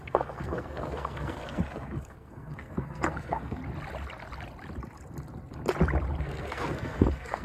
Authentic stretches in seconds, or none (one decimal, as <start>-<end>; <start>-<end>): 3.6-6.2